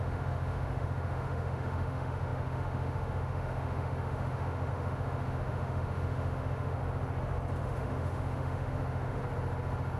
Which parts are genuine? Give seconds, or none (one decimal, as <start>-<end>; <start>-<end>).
6.8-7.6; 9.2-10.0